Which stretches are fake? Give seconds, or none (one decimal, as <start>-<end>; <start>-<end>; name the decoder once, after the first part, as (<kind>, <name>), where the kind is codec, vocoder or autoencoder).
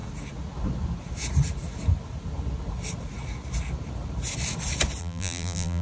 5.0-5.8 (vocoder, BigVGAN v2)